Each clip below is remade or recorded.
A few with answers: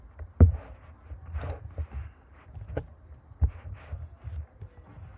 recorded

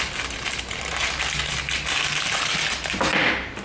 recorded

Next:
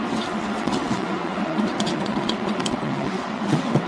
remade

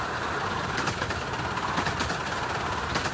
recorded